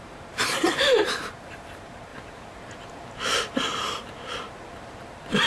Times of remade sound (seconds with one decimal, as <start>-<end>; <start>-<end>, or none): 0.0-5.5